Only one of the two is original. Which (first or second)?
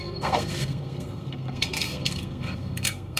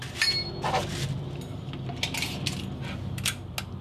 second